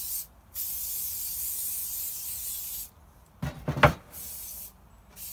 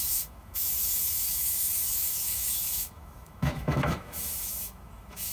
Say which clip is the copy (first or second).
second